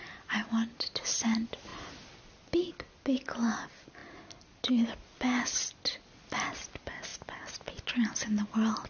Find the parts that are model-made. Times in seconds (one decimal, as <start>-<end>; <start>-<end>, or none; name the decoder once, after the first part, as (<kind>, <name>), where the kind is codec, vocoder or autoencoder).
none